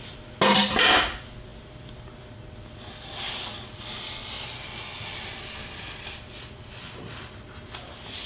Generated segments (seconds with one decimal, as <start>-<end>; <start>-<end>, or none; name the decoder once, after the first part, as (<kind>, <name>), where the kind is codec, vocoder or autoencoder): none